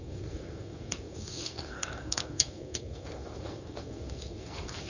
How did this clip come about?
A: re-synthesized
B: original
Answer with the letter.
A